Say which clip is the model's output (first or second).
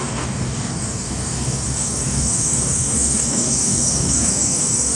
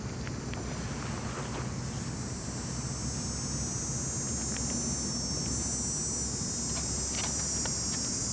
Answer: first